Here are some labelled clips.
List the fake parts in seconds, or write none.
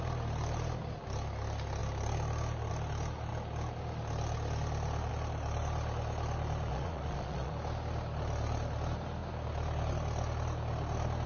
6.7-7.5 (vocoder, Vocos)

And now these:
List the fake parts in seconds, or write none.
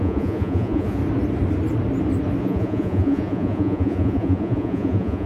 0.0-1.0 (vocoder, Vocos); 2.4-5.3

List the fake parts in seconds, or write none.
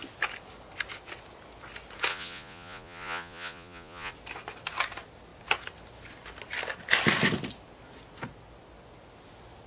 2.1-4.1 (vocoder, Vocos)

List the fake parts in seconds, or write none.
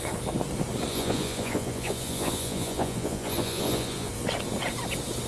0.9-4.1 (vocoder, Vocos)